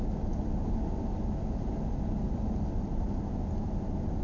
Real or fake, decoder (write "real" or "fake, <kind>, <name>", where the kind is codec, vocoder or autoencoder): real